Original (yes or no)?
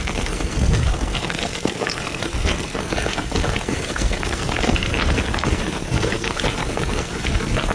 no